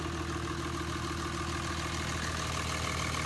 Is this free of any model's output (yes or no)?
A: yes